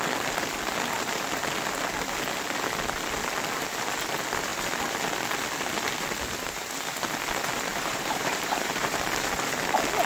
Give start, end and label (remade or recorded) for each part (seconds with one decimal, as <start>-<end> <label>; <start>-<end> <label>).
0.0-7.7 recorded; 7.7-9.0 remade; 9.0-10.1 recorded